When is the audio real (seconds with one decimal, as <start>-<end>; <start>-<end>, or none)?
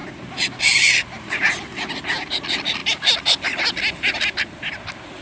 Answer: 0.0-5.2